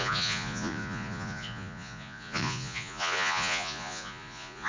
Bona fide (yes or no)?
no